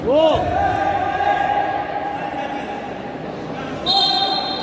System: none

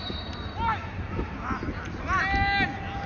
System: none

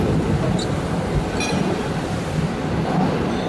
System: none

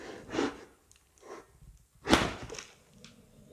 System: none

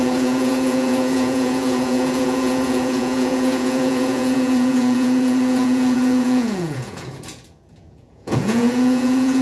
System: vocoder, Vocos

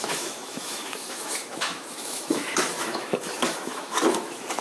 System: autoencoder, DAC-VAE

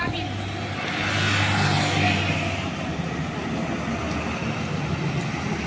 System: none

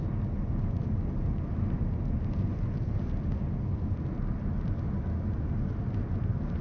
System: none